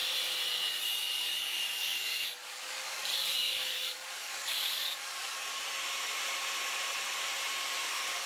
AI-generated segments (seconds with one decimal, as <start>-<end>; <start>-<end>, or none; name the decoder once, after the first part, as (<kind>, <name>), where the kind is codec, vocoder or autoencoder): 0.8-5.5 (codec, DAC); 7.8-8.3